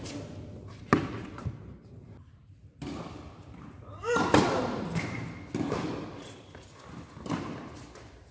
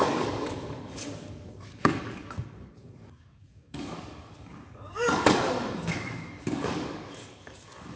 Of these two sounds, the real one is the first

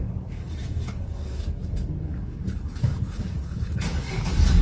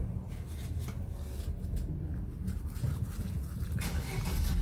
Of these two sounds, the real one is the second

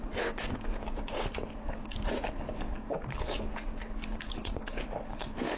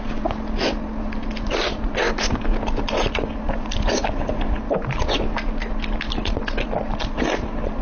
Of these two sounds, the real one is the second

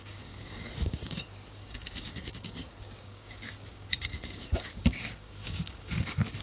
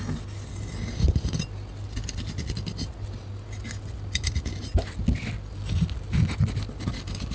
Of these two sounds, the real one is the second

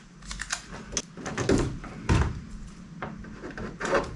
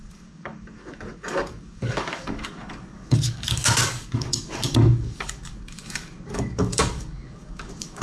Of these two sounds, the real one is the first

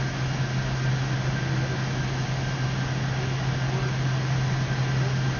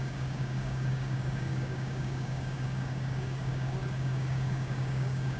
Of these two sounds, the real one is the first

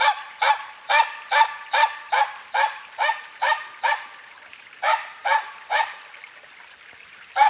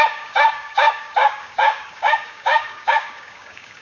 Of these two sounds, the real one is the first